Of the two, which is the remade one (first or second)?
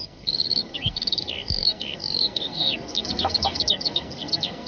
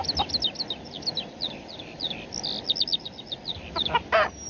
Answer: first